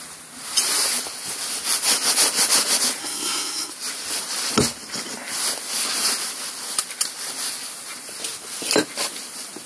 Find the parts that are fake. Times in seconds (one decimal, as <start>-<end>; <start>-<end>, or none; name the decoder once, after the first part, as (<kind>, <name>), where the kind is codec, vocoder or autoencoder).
3.0-3.7 (codec, SNAC)